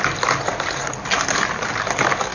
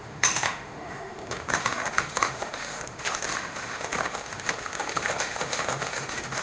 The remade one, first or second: second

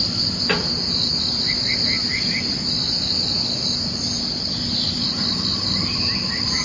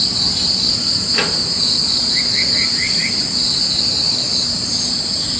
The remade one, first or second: second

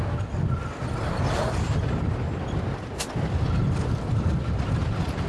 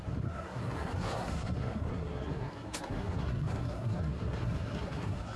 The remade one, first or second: second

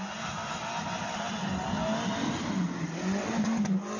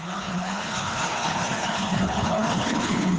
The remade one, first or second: second